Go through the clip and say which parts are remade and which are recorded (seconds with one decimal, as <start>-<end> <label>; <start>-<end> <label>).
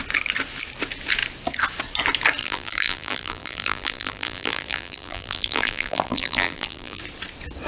0.0-2.4 recorded; 2.4-7.0 remade; 7.0-7.7 recorded